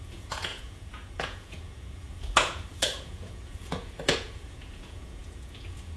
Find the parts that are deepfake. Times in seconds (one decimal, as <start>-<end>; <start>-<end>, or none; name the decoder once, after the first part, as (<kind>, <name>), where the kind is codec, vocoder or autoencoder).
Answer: 0.0-6.0 (vocoder, Vocos)